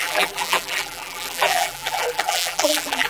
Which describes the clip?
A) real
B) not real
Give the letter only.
B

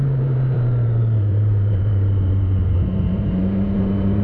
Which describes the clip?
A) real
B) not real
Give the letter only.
B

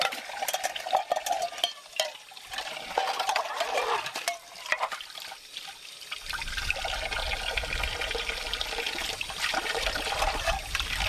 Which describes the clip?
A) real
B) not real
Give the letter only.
A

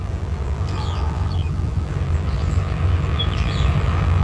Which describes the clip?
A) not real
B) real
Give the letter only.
A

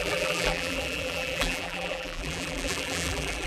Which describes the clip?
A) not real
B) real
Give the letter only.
A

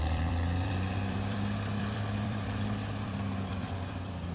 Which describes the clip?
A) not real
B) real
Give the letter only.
A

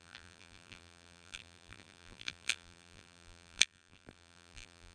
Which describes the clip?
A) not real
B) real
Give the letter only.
A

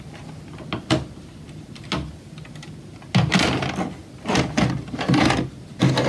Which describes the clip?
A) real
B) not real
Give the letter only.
A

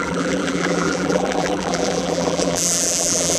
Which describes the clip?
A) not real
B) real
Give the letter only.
A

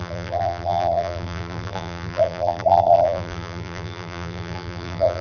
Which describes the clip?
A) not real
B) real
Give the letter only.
A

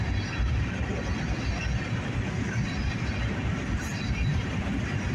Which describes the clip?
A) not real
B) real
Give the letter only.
B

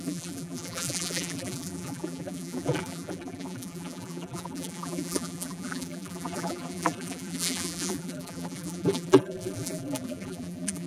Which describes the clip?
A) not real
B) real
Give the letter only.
A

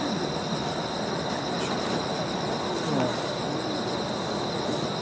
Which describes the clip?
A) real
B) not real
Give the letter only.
A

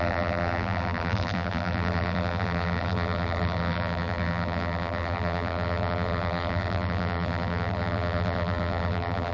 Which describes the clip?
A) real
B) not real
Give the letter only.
B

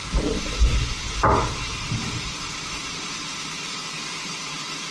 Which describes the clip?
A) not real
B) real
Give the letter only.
A